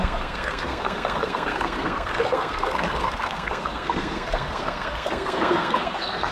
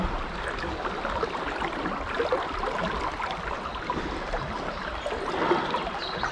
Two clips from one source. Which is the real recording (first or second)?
second